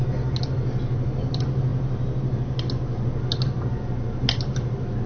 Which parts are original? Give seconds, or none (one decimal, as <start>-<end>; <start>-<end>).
0.0-5.1